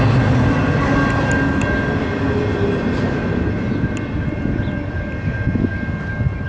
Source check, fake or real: real